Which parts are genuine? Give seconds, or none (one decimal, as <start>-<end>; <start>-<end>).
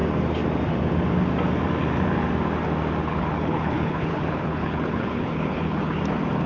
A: 0.0-3.0; 6.0-6.5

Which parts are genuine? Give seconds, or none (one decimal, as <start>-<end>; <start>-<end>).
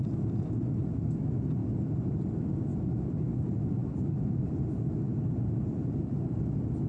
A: 0.0-1.6; 2.3-3.8; 4.6-6.9